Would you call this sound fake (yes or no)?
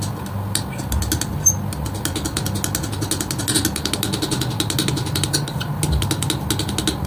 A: no